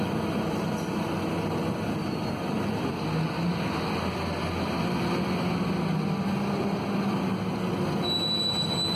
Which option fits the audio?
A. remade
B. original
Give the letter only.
B